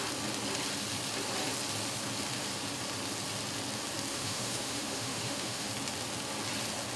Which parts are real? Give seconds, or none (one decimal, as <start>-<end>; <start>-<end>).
0.0-4.1; 5.7-7.0